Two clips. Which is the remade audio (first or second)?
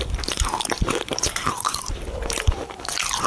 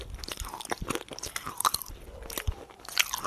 first